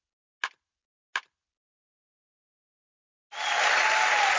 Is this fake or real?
real